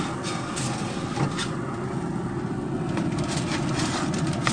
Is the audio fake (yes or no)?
no